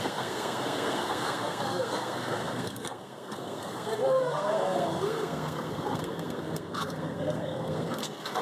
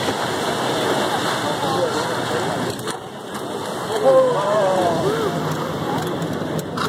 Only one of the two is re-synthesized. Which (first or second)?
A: first